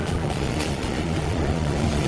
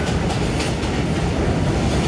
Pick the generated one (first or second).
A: first